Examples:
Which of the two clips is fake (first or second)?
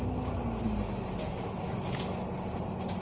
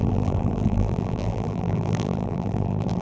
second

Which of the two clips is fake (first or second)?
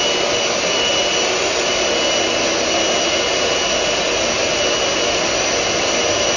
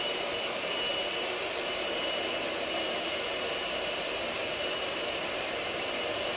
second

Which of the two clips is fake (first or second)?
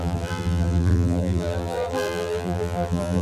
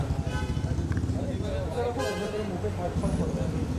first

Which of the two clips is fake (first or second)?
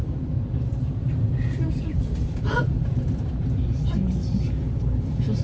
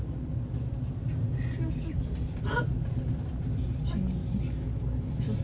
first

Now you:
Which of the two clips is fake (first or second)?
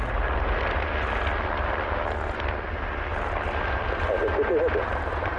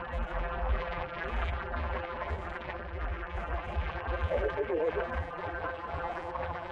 second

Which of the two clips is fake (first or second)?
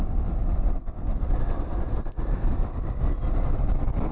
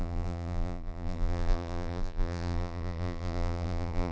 second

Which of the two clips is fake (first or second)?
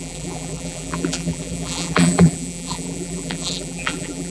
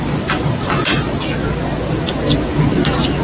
first